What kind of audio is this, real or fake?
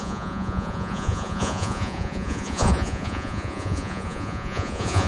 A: fake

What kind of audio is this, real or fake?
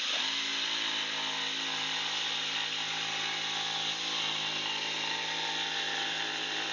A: real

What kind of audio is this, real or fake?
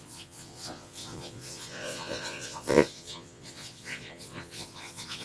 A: fake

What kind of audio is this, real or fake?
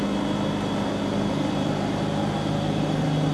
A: real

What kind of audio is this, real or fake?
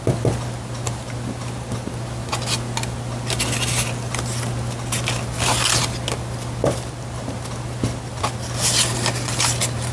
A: real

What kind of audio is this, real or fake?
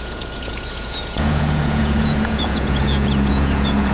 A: fake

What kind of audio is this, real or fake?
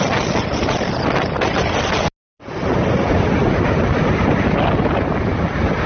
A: real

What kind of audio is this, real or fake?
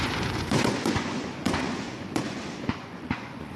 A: fake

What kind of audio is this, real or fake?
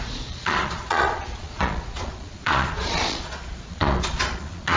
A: fake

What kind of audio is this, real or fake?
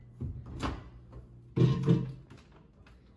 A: real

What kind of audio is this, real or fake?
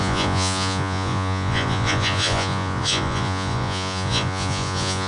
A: fake